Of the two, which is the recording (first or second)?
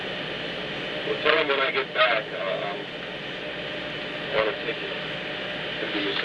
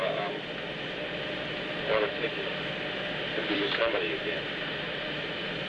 first